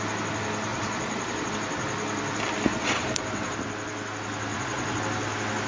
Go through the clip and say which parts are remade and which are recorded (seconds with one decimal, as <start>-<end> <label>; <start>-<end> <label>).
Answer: 0.0-0.7 recorded; 0.7-1.5 remade; 1.5-2.7 recorded; 2.7-3.5 remade; 3.5-4.5 recorded; 4.5-5.0 remade; 5.0-5.7 recorded